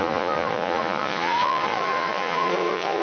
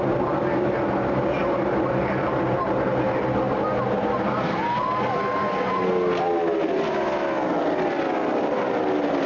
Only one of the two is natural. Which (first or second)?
second